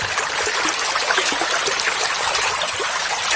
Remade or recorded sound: recorded